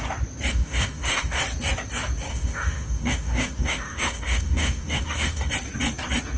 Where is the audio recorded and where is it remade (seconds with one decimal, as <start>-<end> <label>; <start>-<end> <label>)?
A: 0.0-0.5 recorded; 0.5-1.4 remade; 1.4-2.3 recorded; 2.3-5.5 remade; 5.5-6.4 recorded